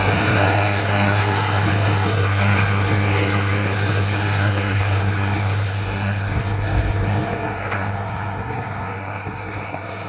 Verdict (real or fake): fake